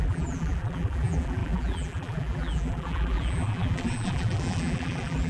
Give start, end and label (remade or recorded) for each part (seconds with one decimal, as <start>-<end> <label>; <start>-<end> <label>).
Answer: 0.0-5.3 remade